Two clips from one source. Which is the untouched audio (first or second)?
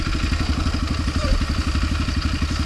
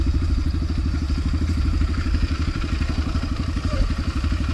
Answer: first